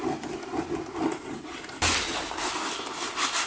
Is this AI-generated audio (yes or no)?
no